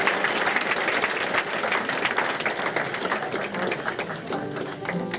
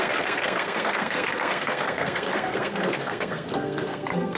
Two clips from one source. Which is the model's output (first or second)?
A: second